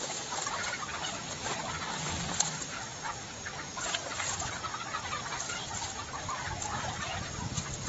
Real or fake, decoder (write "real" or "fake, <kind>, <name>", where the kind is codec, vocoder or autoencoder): real